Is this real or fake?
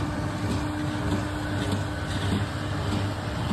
real